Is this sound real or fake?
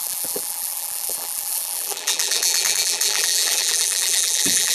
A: fake